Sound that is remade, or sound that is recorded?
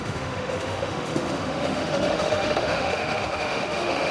remade